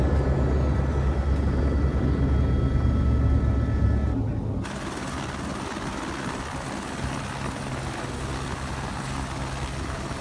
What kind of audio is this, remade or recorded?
recorded